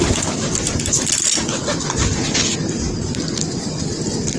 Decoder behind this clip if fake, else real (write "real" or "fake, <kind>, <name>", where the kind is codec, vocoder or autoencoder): real